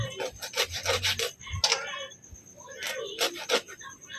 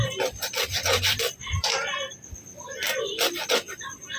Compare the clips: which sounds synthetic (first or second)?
second